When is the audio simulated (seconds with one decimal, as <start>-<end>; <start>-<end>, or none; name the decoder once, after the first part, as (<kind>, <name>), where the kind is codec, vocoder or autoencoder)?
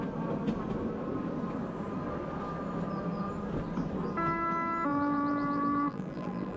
4.9-6.6 (vocoder, BigVGAN v2)